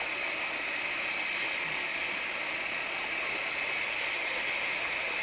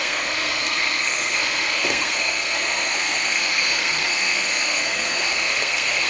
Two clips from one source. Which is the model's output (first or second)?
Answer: second